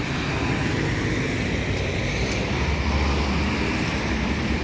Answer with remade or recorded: recorded